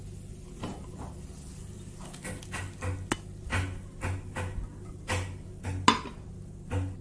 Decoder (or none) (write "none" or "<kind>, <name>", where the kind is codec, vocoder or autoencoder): none